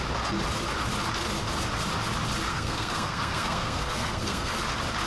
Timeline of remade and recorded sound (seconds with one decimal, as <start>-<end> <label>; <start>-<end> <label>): 0.0-2.5 recorded; 2.5-4.6 remade; 4.6-5.1 recorded